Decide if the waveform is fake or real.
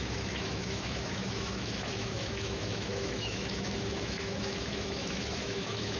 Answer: fake